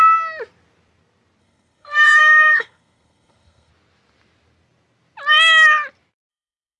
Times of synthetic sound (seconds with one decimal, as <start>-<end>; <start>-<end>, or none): 1.4-3.7; 6.3-6.8